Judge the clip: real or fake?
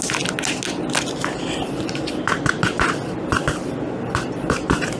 real